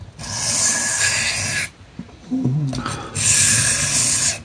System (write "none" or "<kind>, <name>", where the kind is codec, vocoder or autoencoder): none